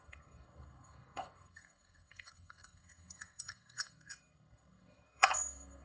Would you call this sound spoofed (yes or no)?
yes